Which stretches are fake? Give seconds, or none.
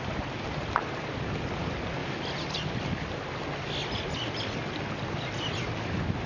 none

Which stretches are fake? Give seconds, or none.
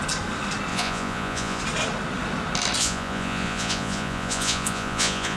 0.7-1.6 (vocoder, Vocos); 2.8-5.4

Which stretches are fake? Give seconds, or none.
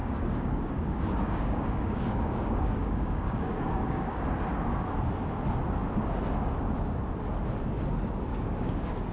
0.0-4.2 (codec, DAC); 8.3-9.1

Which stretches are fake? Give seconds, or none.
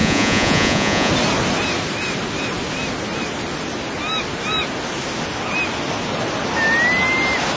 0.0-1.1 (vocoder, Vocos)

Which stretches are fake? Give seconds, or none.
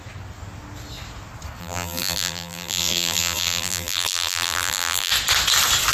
1.6-5.1 (vocoder, BigVGAN v2)